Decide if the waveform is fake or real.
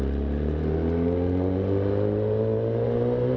real